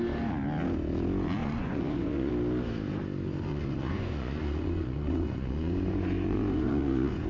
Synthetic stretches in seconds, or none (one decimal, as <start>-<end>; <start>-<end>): 1.4-2.3; 3.5-7.3